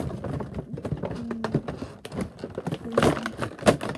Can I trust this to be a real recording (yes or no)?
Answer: yes